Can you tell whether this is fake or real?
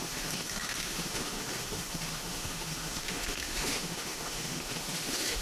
fake